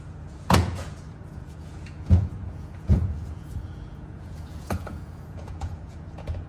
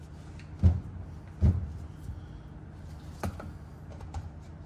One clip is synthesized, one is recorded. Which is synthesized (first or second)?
first